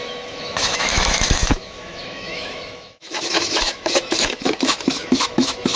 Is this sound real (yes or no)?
no